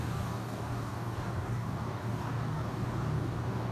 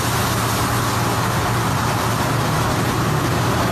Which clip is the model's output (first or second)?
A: first